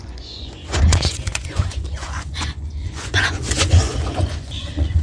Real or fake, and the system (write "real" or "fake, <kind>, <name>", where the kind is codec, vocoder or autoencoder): fake, vocoder, Vocos